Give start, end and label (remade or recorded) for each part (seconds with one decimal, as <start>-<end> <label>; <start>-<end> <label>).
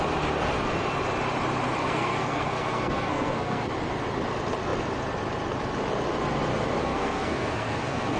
0.0-1.8 recorded; 1.8-3.7 remade; 3.7-6.8 recorded; 6.8-8.2 remade